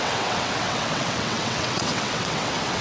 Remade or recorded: remade